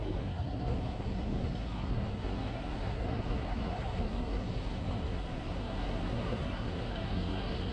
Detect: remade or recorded remade